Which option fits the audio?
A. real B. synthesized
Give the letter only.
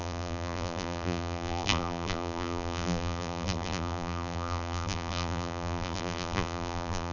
B